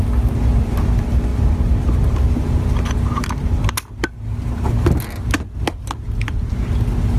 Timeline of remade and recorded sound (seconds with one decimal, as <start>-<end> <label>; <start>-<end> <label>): 0.0-7.2 recorded